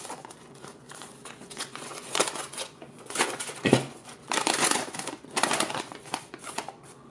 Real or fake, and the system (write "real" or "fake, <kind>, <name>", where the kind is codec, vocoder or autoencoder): fake, vocoder, Vocos